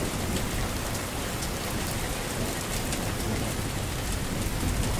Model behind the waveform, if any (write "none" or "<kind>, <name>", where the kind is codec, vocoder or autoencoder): none